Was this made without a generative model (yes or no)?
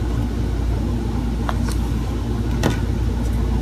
yes